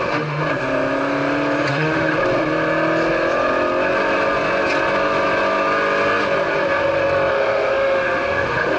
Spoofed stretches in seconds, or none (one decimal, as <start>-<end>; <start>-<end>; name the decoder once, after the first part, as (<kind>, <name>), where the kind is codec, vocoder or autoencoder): 0.0-0.4 (autoencoder, DAC-VAE); 1.7-2.1; 7.3-8.8